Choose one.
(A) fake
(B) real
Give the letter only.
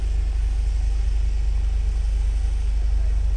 B